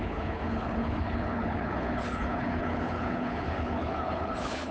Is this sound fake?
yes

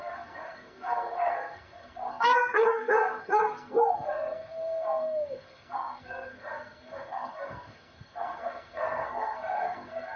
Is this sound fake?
yes